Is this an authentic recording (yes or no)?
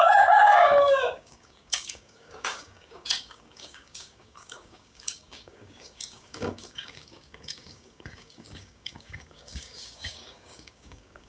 no